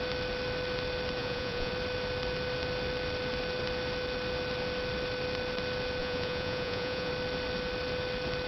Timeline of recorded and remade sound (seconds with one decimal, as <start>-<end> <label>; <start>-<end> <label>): 0.0-1.2 recorded; 1.2-1.7 remade; 1.7-6.0 recorded; 6.0-7.1 remade; 7.1-8.5 recorded